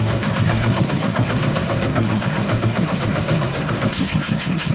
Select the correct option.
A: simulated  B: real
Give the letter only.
A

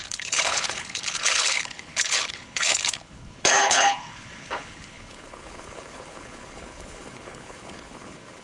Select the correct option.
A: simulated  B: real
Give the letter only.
A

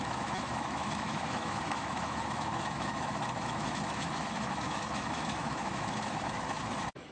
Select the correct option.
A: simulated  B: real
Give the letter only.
A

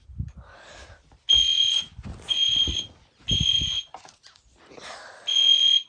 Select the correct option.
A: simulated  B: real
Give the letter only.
B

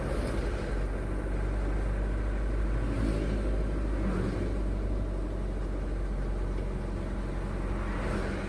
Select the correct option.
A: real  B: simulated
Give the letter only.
A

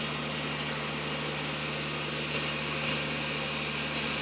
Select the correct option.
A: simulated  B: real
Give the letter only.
B